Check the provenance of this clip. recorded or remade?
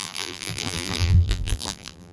remade